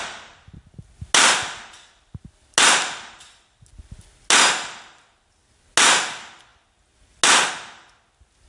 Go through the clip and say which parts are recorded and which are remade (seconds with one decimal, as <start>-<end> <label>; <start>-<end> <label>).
0.0-8.5 recorded